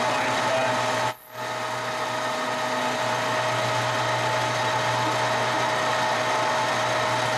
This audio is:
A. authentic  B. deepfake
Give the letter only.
A